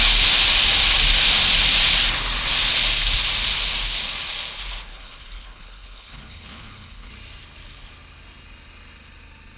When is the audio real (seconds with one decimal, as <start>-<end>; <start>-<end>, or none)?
0.0-4.9; 7.1-9.6